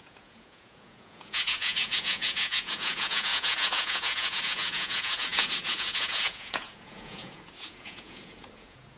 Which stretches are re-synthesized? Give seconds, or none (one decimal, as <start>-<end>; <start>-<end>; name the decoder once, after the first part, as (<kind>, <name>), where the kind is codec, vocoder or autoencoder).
0.0-9.0 (vocoder, Vocos)